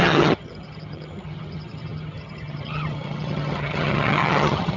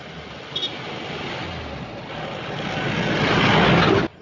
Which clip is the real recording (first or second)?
second